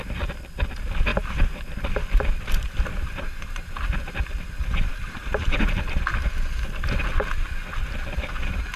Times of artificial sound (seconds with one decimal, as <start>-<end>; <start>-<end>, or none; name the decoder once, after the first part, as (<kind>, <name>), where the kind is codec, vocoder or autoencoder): 1.1-1.9 (vocoder, BigVGAN v2); 2.9-3.8; 4.9-5.7